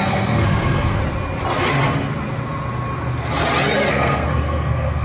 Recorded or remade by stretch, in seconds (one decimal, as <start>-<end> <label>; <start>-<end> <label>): 0.0-1.0 remade; 1.0-3.9 recorded; 3.9-5.0 remade